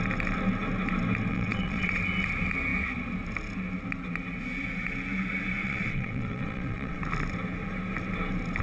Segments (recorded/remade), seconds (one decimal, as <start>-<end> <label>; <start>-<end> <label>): 0.0-1.3 recorded; 1.3-2.0 remade; 2.0-5.6 recorded; 5.6-7.0 remade; 7.0-8.6 recorded